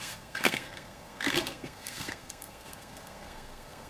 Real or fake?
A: fake